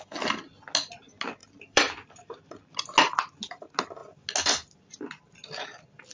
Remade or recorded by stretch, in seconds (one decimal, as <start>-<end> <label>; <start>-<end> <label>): 0.0-1.4 recorded; 1.4-2.4 remade; 2.4-6.1 recorded